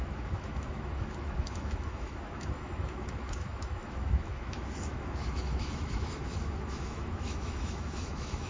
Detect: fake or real fake